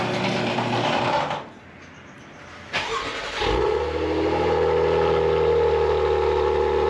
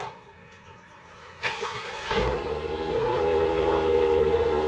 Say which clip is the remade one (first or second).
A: second